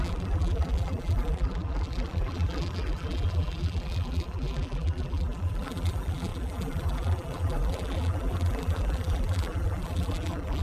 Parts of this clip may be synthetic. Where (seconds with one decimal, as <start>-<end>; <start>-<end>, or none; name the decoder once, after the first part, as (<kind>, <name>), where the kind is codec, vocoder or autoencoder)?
0.0-10.6 (vocoder, BigVGAN v2)